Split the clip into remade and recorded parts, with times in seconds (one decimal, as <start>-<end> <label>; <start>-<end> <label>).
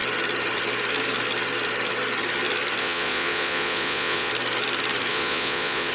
0.0-2.8 recorded; 2.8-4.3 remade; 4.3-5.1 recorded; 5.1-5.9 remade